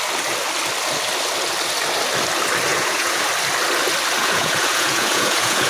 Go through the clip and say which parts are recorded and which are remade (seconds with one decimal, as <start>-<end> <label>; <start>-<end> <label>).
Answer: 0.0-2.7 recorded; 2.7-3.2 remade; 3.2-4.2 recorded; 4.2-5.7 remade